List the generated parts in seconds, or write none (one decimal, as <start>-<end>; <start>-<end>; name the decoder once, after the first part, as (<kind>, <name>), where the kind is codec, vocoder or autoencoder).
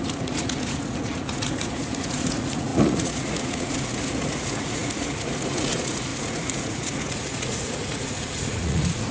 0.0-9.1 (vocoder, Vocos)